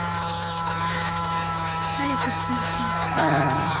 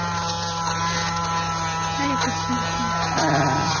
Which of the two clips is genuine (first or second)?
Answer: second